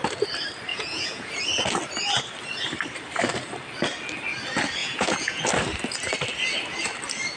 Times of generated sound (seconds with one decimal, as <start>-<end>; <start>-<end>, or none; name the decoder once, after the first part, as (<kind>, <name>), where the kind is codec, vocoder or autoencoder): 0.7-1.4 (vocoder, Vocos); 4.8-5.4